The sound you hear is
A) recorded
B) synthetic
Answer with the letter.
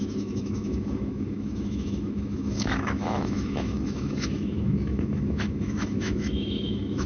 B